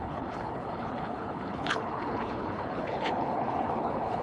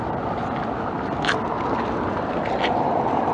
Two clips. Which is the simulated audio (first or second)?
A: first